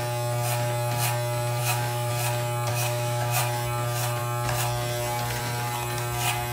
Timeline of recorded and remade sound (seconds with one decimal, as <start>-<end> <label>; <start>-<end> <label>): 0.0-1.6 recorded; 1.6-2.1 remade; 2.1-2.7 recorded; 2.7-3.4 remade; 3.4-6.5 recorded